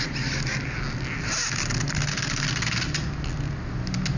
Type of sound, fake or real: real